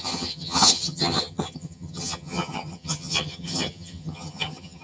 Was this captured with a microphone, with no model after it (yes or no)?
no